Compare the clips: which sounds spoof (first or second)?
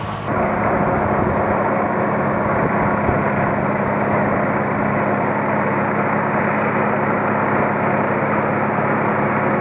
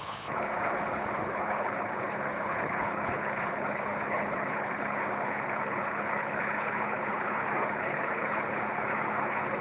second